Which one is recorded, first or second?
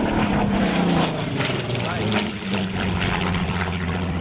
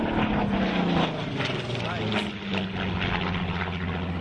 second